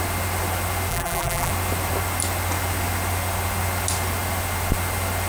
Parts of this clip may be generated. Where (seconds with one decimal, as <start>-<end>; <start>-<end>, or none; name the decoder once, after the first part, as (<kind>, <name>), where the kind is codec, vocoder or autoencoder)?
0.9-1.5 (vocoder, BigVGAN v2)